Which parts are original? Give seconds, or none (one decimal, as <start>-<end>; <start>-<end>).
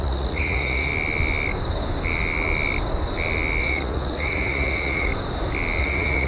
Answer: 0.9-3.6; 5.1-5.8